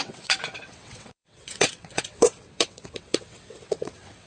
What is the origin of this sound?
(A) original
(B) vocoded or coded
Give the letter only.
B